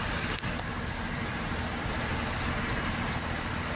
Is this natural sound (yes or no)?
yes